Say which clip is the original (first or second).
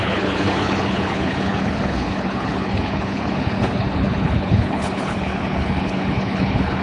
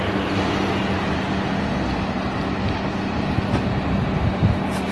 second